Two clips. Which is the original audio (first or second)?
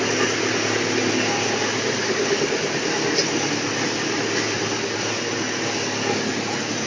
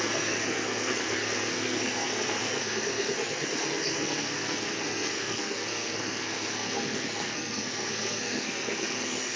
first